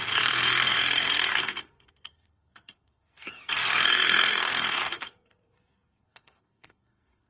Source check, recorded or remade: remade